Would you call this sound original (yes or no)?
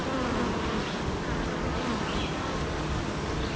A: yes